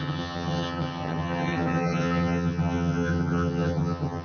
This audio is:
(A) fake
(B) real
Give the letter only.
A